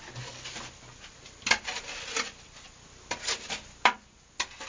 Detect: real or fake real